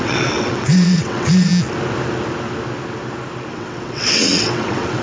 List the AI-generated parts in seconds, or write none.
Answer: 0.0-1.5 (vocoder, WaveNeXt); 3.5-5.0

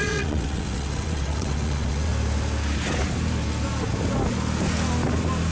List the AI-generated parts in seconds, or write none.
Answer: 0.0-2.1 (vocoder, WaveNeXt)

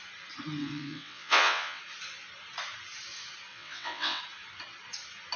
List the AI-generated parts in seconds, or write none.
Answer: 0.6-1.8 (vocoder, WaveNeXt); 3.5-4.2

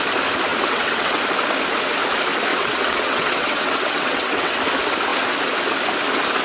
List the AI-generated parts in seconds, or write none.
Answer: 0.5-1.2 (vocoder, WaveNeXt); 2.5-4.6

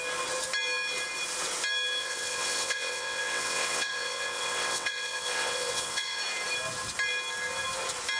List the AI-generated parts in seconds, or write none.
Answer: 2.0-6.2 (vocoder, WaveNeXt)